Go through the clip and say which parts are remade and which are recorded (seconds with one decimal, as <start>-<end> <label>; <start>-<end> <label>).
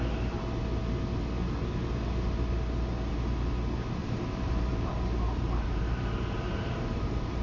0.0-4.0 recorded; 4.0-7.4 remade